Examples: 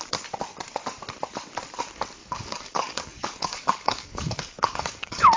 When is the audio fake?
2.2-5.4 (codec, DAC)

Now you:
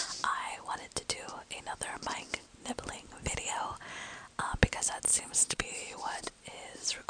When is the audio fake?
5.1-6.5 (vocoder, Vocos)

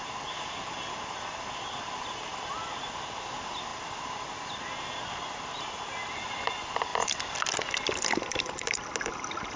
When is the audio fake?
none

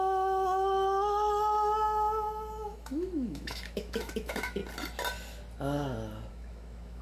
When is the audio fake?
0.0-4.6 (autoencoder, DAC-VAE); 6.3-7.0

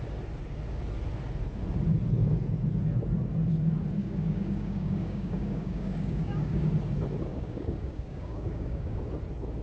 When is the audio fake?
4.0-6.7 (codec, DAC); 7.3-9.0